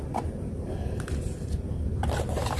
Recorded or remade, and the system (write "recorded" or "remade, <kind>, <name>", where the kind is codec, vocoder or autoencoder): recorded